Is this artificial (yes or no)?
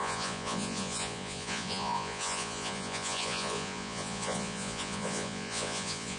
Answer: yes